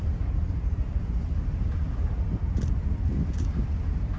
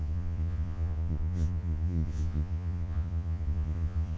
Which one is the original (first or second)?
first